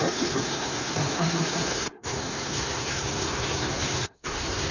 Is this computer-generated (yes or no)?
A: yes